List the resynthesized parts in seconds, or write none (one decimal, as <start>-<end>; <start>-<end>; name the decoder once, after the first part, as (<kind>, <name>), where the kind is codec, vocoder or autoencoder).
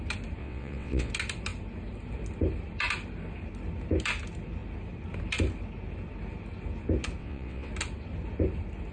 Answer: 0.4-1.1 (vocoder, WaveNeXt); 7.2-7.7